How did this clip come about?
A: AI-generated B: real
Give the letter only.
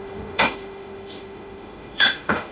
A